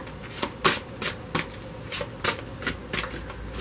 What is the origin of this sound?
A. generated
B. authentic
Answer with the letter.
B